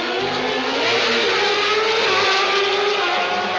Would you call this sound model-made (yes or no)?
no